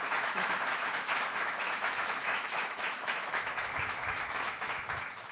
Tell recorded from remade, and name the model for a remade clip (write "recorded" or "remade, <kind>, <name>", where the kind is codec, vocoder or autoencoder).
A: remade, autoencoder, DAC-VAE